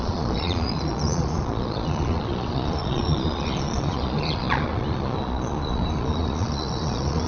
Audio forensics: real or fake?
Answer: fake